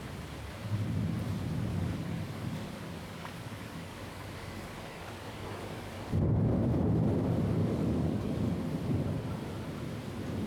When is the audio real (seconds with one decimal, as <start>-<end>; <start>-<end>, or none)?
0.0-1.7; 6.2-7.6; 8.5-10.5